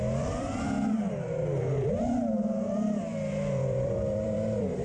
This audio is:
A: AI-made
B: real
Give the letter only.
A